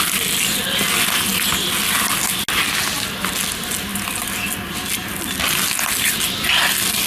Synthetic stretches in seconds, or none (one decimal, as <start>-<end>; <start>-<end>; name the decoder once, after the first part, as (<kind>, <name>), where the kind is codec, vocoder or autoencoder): none